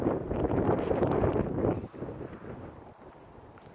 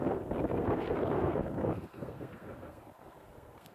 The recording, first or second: first